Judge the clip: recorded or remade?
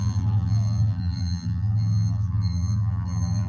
remade